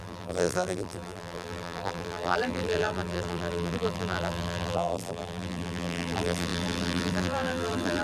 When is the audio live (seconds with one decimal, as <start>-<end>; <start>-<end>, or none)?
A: none